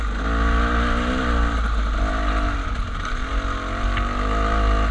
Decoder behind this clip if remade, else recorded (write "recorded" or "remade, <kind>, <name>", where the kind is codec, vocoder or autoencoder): recorded